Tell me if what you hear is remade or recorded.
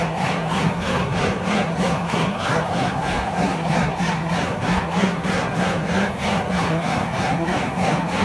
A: remade